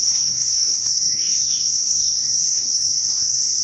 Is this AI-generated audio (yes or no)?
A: yes